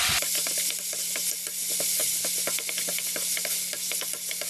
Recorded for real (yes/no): yes